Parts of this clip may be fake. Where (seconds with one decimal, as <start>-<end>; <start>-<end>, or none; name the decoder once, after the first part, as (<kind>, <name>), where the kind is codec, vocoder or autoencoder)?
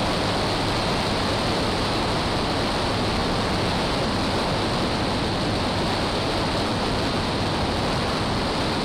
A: none